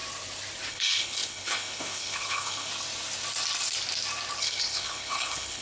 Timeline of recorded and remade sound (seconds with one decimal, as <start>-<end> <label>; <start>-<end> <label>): 0.0-0.7 recorded; 0.7-2.7 remade; 2.7-4.4 recorded; 4.4-5.6 remade